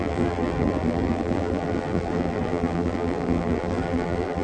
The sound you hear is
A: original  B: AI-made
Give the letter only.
B